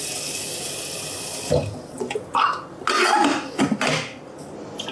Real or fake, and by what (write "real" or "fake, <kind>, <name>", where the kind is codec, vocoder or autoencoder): real